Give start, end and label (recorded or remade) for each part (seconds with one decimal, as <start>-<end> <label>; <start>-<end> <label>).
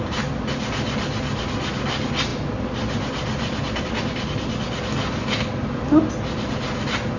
0.0-7.2 recorded